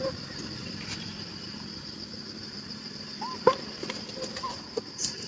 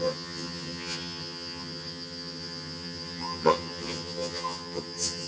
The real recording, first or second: first